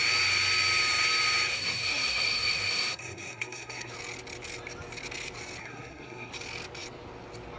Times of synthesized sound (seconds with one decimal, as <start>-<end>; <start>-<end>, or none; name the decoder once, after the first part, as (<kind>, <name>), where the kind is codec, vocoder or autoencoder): 1.5-3.9 (codec, SNAC); 5.6-6.3